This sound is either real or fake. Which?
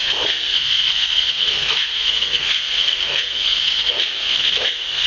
fake